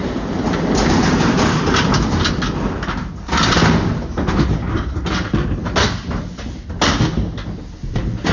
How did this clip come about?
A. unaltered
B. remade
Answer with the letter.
A